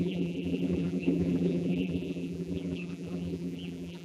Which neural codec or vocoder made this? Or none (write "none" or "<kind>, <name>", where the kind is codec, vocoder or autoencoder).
vocoder, BigVGAN v2